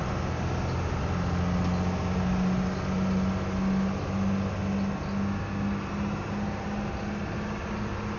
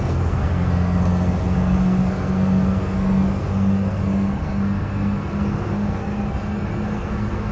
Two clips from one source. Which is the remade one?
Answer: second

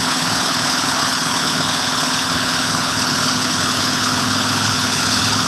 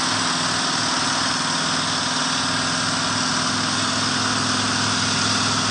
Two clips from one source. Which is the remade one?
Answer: first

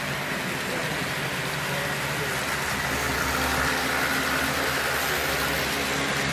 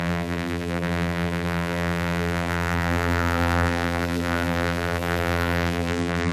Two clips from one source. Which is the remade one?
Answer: second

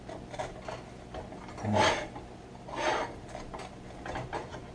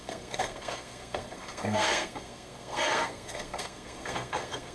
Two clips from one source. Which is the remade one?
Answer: second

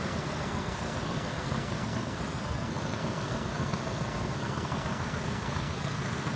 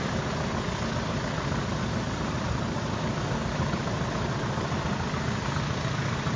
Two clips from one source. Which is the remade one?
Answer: first